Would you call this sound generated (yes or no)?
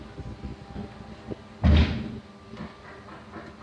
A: no